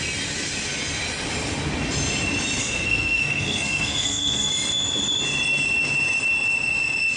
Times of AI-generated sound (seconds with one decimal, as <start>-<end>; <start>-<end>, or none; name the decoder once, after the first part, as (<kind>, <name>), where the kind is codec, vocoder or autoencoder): 2.6-4.5 (codec, SNAC)